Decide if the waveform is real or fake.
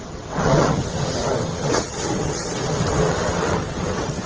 fake